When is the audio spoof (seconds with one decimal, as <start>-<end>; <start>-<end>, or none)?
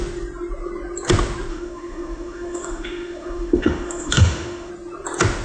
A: 1.5-4.7